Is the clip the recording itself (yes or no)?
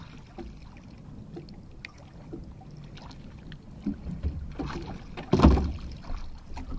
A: yes